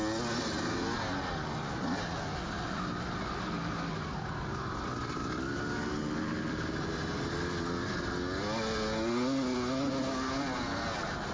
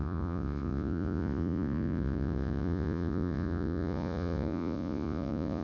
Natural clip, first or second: first